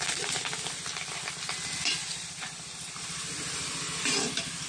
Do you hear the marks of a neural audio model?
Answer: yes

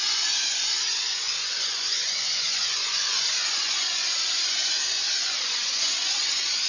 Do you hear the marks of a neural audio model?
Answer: yes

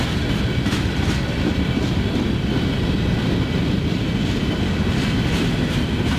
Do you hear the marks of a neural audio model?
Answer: no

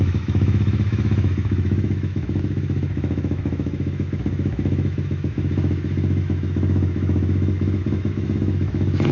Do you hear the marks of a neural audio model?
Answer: yes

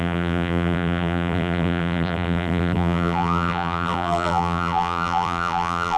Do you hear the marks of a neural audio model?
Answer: yes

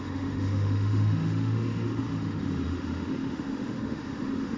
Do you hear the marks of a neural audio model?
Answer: yes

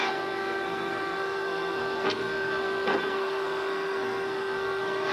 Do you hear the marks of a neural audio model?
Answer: yes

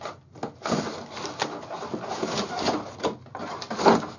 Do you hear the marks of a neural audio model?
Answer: no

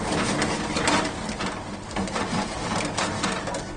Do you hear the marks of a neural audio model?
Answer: no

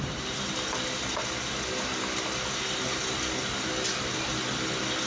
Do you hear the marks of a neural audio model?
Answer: no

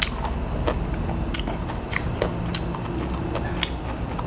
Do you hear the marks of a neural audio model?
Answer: no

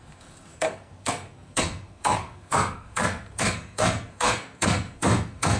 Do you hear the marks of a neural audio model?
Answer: yes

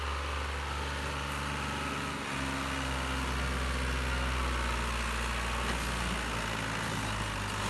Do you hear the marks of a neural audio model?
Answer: no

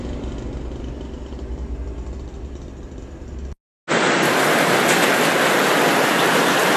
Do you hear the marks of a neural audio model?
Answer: no